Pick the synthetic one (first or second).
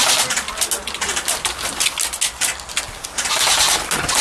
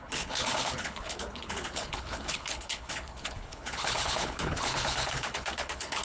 second